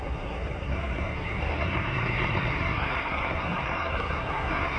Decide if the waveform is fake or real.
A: fake